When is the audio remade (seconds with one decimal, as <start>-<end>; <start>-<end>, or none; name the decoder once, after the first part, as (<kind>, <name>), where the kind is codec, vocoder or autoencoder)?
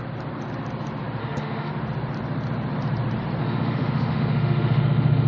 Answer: 1.2-1.7 (autoencoder, DAC-VAE); 3.4-5.3